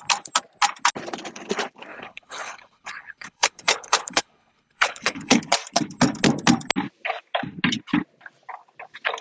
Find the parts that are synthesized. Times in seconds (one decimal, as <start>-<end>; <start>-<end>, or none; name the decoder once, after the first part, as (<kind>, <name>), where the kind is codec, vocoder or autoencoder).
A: 1.9-5.4 (codec, HILCodec)

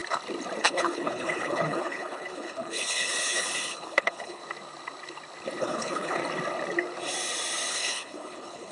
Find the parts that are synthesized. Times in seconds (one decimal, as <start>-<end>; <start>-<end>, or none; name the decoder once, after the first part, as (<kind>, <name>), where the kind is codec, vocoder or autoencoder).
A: 0.6-4.4 (codec, HILCodec); 5.6-6.2; 7.7-8.7

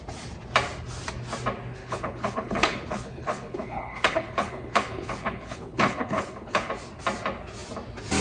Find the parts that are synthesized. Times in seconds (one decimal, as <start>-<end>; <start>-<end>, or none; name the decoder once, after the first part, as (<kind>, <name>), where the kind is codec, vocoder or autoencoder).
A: 1.8-6.7 (codec, HILCodec)

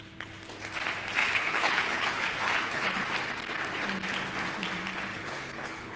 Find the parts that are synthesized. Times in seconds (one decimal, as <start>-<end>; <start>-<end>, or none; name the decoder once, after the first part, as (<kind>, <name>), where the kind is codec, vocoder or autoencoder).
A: 1.2-3.0 (codec, HILCodec); 5.1-6.0

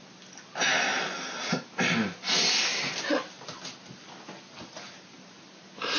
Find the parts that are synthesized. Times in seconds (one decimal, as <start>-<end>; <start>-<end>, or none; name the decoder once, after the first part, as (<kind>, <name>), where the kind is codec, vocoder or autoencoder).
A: none

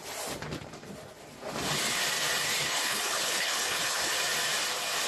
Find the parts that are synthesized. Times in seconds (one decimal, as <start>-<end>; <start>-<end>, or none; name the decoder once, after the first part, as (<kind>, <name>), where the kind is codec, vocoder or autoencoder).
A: 2.6-4.1 (codec, HILCodec)